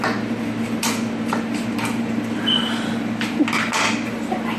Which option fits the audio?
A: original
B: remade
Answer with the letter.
B